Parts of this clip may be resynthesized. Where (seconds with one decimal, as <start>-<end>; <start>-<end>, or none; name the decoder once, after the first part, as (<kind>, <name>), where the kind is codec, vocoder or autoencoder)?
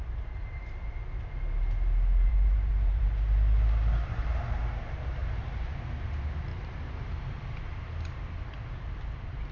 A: 2.3-3.0 (vocoder, BigVGAN v2); 5.2-5.7; 6.5-7.4